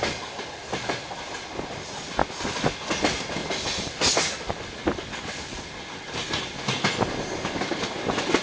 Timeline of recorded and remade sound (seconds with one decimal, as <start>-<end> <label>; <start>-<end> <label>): 0.0-8.4 recorded